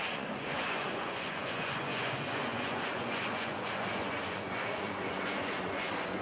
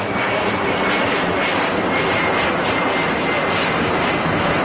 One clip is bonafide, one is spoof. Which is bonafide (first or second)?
second